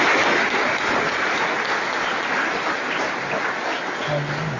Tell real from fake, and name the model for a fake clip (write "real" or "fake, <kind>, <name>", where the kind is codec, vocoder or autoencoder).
real